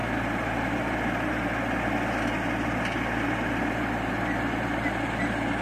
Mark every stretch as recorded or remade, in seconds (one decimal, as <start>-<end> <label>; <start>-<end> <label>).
0.0-5.6 recorded